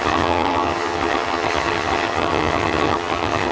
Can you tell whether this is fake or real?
fake